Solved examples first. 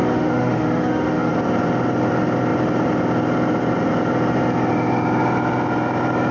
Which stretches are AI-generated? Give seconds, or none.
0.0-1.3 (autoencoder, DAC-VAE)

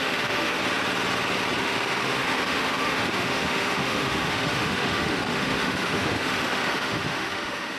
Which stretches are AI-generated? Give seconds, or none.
0.0-0.6 (autoencoder, DAC-VAE); 1.6-7.8

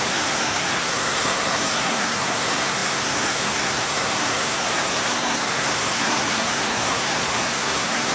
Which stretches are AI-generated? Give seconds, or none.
0.0-8.1 (codec, SNAC)

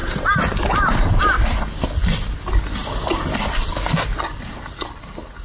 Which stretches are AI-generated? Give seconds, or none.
0.0-1.2 (vocoder, BigVGAN v2); 2.8-3.4